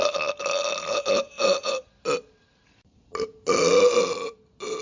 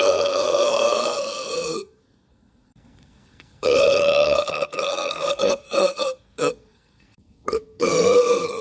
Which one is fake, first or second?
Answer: second